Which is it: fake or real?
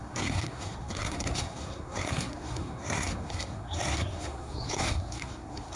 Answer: fake